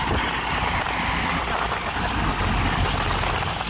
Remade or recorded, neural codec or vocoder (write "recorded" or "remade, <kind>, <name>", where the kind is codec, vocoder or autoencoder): recorded